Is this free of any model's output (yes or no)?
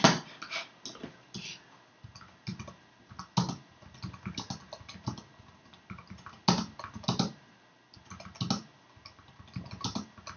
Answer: yes